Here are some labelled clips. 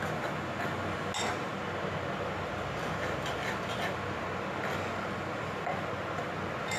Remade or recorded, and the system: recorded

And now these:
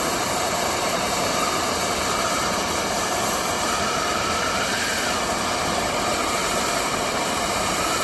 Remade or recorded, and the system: remade, vocoder, BigVGAN v2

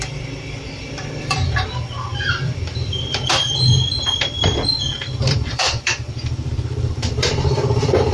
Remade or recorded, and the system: remade, vocoder, BigVGAN v2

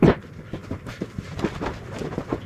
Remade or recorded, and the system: remade, vocoder, BigVGAN v2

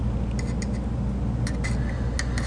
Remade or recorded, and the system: recorded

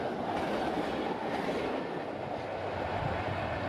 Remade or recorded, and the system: recorded